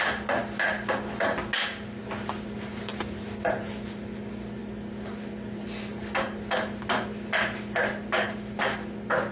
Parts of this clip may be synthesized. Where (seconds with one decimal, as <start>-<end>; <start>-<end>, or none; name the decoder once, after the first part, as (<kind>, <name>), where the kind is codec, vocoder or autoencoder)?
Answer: none